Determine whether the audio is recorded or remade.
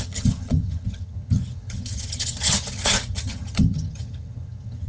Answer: remade